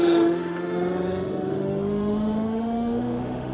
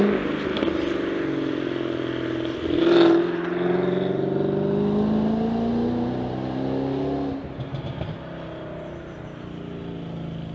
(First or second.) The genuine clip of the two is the second